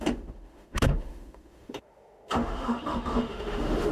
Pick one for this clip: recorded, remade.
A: remade